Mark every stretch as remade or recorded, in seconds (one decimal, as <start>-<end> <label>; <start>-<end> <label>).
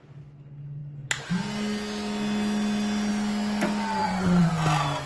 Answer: 0.0-4.0 recorded; 4.0-4.5 remade; 4.5-5.1 recorded